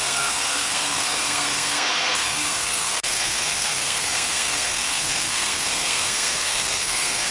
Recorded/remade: remade